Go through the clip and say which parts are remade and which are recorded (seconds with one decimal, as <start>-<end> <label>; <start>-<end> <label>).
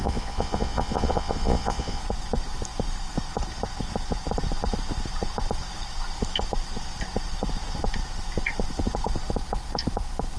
0.0-2.0 remade; 2.0-10.4 recorded